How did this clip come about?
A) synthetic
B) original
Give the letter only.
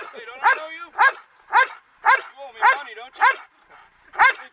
B